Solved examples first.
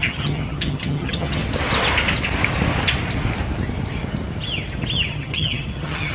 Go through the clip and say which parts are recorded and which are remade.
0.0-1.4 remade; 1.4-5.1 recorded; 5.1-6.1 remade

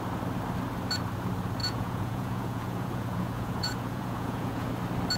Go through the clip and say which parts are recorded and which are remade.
0.0-1.6 recorded; 1.6-4.7 remade; 4.7-5.2 recorded

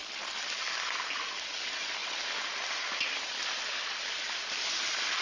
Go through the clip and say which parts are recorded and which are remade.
0.0-5.2 recorded

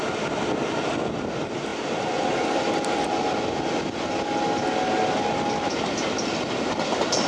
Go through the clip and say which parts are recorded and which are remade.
0.0-7.3 recorded

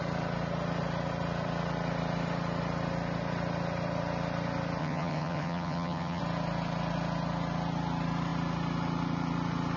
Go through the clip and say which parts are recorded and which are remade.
0.0-4.8 recorded; 4.8-6.2 remade; 6.2-9.8 recorded

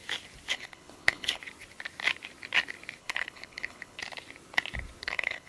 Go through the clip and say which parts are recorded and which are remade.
0.0-0.5 recorded; 0.5-1.4 remade; 1.4-3.0 recorded; 3.0-4.0 remade; 4.0-5.0 recorded; 5.0-5.5 remade

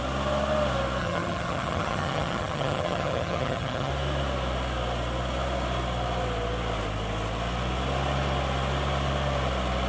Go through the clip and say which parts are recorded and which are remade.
0.0-1.0 recorded; 1.0-3.9 remade; 3.9-9.9 recorded